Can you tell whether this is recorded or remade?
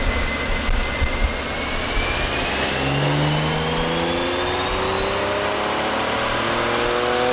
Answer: recorded